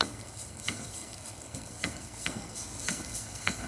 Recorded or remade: remade